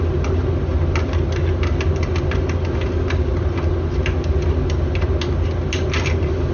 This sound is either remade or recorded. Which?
recorded